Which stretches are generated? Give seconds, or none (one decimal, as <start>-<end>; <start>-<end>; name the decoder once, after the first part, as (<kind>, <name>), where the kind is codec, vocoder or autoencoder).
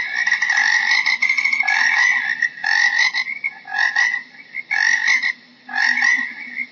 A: 0.0-0.6 (vocoder, BigVGAN v2); 3.9-5.5; 6.1-6.7